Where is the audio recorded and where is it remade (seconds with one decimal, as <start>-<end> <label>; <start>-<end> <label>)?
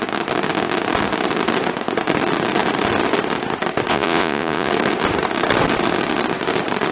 0.0-3.9 recorded; 3.9-4.7 remade; 4.7-6.9 recorded